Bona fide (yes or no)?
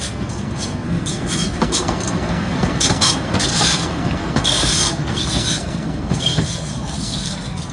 no